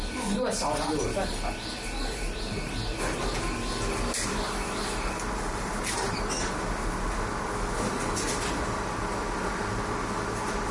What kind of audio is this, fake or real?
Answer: real